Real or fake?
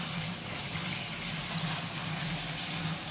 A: real